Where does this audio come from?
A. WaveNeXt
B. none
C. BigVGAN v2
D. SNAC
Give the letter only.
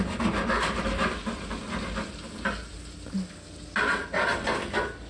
B